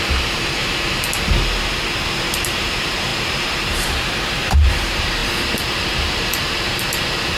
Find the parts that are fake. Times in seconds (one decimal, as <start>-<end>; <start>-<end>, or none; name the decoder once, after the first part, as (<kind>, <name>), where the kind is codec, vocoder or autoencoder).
0.0-0.6 (vocoder, BigVGAN v2); 2.1-7.4